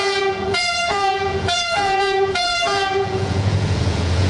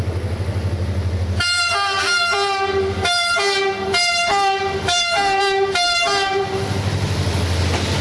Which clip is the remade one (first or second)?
first